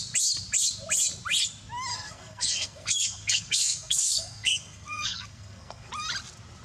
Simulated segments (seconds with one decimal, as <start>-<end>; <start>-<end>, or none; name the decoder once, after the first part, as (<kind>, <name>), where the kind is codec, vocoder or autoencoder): 1.9-5.9 (codec, SNAC)